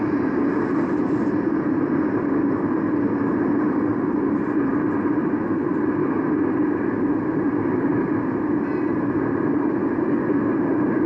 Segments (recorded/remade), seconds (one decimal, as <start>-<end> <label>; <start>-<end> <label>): 0.0-11.1 recorded